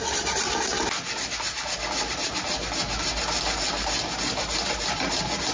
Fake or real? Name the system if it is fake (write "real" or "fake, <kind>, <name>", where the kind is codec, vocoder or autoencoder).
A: real